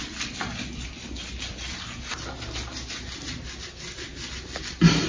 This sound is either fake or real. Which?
real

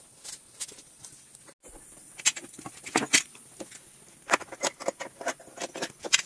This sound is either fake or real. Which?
real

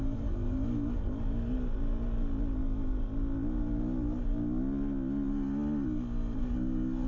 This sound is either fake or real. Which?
real